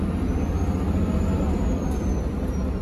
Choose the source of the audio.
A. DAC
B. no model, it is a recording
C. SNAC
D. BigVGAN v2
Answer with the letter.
B